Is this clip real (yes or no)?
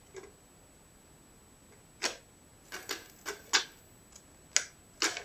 yes